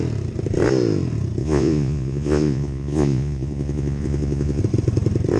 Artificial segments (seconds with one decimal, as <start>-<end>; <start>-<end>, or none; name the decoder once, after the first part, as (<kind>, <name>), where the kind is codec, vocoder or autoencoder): 1.4-4.6 (vocoder, Vocos)

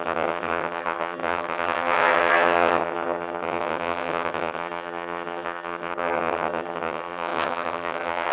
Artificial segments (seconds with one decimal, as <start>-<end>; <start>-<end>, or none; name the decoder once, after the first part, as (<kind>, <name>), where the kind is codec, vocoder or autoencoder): 0.0-8.3 (vocoder, HiFi-GAN)

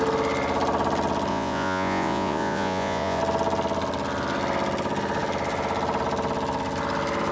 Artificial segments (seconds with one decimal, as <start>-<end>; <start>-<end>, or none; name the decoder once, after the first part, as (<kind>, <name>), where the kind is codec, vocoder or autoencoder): 1.3-3.2 (vocoder, Vocos)

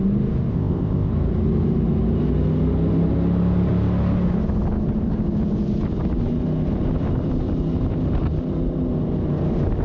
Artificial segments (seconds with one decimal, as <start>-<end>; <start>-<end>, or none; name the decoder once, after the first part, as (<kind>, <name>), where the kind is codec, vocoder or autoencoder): 0.5-1.1 (codec, ZipCodec)

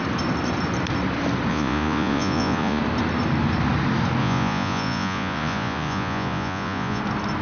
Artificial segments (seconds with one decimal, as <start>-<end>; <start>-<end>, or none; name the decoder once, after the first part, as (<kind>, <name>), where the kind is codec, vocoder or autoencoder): 1.5-2.8 (vocoder, Vocos); 4.2-7.0

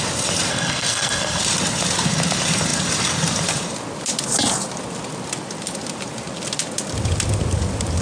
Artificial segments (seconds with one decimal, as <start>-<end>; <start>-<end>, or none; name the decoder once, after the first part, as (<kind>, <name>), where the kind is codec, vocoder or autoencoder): 0.5-1.4 (codec, SNAC)